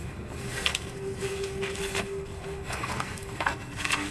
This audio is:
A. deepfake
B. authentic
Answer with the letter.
A